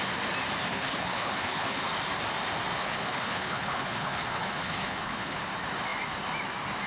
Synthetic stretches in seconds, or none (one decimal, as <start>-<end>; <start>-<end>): 0.7-1.8; 2.8-5.4